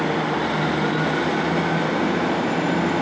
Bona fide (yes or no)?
yes